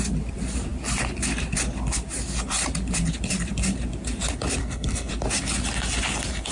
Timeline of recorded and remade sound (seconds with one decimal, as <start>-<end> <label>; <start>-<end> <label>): 0.0-4.6 recorded; 4.6-5.1 remade; 5.1-6.5 recorded